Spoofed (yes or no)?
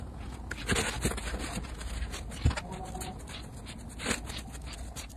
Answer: no